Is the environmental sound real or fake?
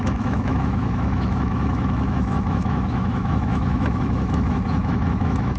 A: fake